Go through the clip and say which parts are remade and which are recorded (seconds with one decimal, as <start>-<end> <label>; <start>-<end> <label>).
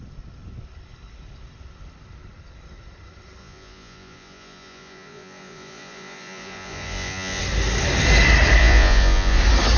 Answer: 0.0-3.4 recorded; 3.4-7.4 remade; 7.4-8.6 recorded; 8.6-9.4 remade; 9.4-9.8 recorded